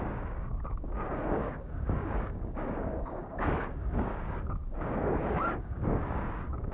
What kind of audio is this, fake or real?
fake